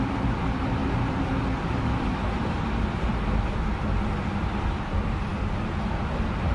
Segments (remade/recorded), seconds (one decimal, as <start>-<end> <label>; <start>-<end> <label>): 0.0-0.8 remade; 0.8-4.7 recorded; 4.7-5.3 remade; 5.3-6.0 recorded; 6.0-6.5 remade